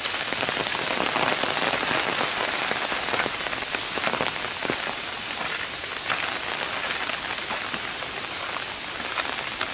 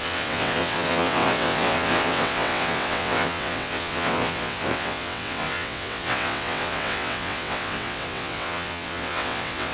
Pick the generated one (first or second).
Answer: second